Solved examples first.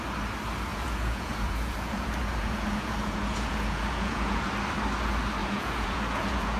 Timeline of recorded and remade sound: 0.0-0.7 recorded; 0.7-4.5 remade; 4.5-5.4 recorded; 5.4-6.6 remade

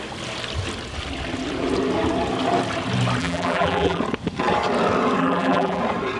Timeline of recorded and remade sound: 0.0-3.2 recorded; 3.2-4.0 remade; 4.0-5.2 recorded; 5.2-5.8 remade; 5.8-6.2 recorded

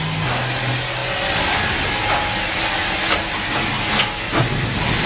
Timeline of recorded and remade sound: 0.0-5.1 recorded

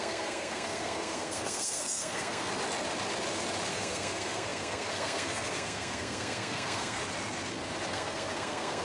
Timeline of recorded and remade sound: 0.0-2.5 remade; 2.5-3.7 recorded; 3.7-7.0 remade; 7.0-7.9 recorded; 7.9-8.8 remade

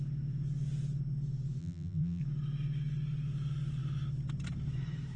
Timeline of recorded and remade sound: 0.0-1.6 recorded; 1.6-2.2 remade; 2.2-5.2 recorded

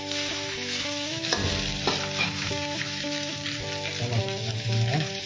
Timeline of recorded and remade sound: 0.0-1.4 remade; 1.4-2.2 recorded; 2.2-3.4 remade; 3.4-4.2 recorded; 4.2-5.3 remade